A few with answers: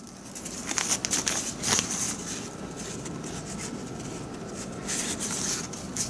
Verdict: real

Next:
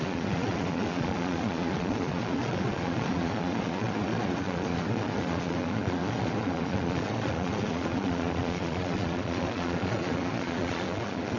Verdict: fake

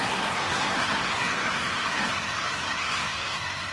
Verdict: fake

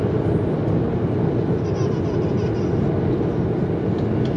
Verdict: real